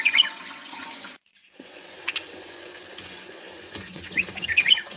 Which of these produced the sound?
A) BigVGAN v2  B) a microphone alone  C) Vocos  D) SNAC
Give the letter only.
C